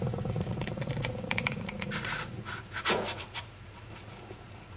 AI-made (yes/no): yes